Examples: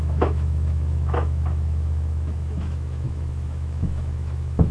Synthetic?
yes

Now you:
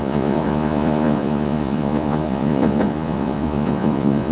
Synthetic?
yes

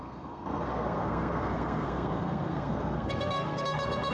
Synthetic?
yes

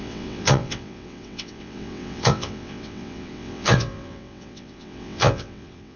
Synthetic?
yes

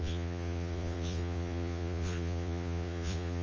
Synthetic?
yes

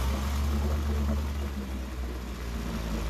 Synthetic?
no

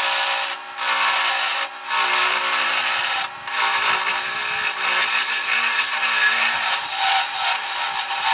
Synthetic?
no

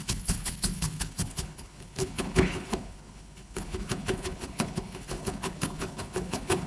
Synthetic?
yes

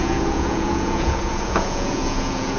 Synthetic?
yes